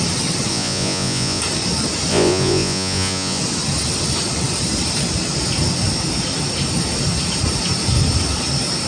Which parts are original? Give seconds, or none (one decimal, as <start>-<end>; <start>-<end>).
0.0-0.5; 1.4-2.1; 3.4-8.9